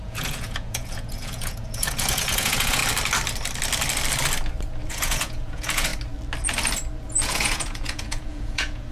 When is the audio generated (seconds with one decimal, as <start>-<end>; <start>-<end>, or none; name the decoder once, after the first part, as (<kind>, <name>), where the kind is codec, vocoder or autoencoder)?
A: 0.0-2.8 (vocoder, Vocos); 4.9-5.9; 7.1-8.9